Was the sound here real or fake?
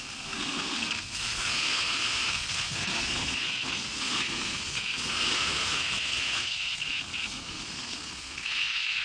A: fake